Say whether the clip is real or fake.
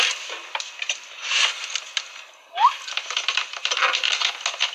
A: real